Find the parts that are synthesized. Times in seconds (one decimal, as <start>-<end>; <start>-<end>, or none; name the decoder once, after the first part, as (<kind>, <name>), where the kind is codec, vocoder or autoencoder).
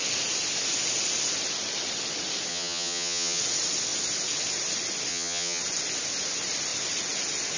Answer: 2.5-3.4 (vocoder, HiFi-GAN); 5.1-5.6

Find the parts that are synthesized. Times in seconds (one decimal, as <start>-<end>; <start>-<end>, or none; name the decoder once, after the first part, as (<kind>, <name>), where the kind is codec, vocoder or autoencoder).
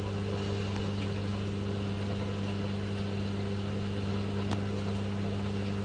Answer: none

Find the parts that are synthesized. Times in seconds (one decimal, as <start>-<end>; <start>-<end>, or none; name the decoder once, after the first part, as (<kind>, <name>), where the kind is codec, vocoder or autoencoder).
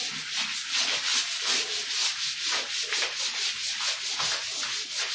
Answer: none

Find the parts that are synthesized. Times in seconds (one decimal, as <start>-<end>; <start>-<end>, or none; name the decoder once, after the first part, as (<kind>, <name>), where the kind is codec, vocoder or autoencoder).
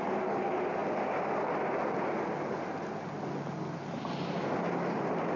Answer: none